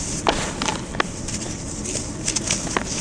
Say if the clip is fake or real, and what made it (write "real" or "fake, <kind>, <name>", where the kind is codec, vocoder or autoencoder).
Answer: real